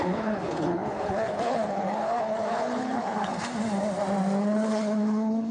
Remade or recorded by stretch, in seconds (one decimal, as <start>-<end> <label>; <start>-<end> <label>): 0.0-3.3 remade; 3.3-4.4 recorded; 4.4-5.5 remade